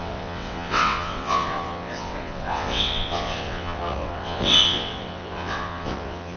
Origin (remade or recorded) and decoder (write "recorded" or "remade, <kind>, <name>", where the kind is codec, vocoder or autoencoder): remade, vocoder, WaveNeXt